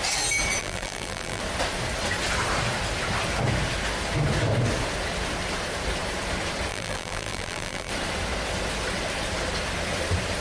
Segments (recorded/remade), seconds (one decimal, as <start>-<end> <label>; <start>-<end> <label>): 0.0-0.6 recorded; 0.6-1.4 remade; 1.4-6.7 recorded; 6.7-7.9 remade; 7.9-10.4 recorded